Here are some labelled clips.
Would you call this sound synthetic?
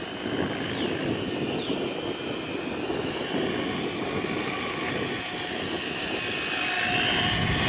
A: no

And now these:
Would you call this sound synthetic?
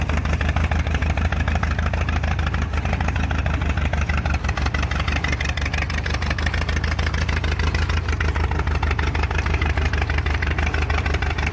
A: no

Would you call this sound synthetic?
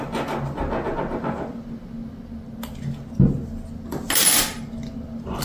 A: no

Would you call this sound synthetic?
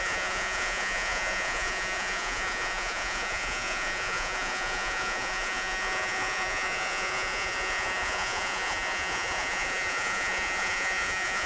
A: yes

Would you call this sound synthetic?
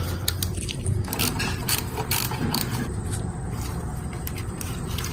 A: yes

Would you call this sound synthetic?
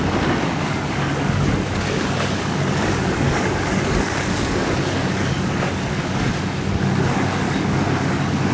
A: yes